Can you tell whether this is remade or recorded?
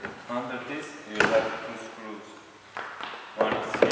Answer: recorded